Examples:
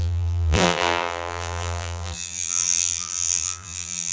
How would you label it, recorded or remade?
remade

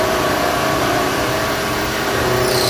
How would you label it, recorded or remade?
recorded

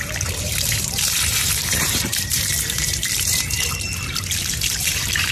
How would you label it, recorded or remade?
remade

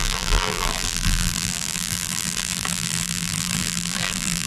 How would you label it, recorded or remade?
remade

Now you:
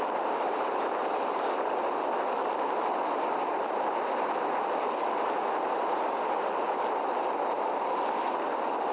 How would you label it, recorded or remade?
recorded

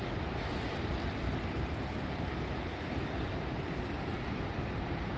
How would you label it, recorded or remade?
remade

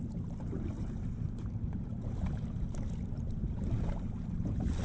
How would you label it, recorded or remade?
remade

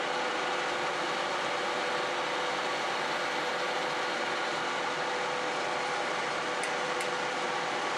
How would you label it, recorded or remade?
recorded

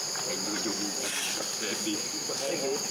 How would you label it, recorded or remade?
recorded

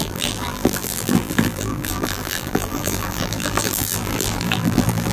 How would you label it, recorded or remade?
remade